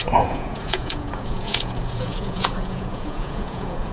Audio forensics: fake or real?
fake